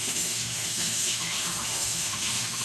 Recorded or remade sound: remade